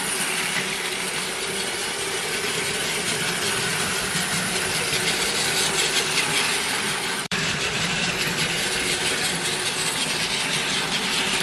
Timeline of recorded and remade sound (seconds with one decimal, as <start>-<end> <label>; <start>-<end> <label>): 0.0-8.0 remade; 8.0-11.0 recorded; 11.0-11.4 remade